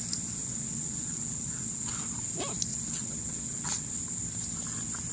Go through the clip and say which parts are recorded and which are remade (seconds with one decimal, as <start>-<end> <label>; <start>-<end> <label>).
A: 0.0-0.4 recorded; 0.4-2.0 remade; 2.0-2.7 recorded; 2.7-3.9 remade; 3.9-5.1 recorded